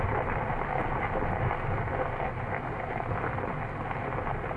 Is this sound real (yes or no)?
yes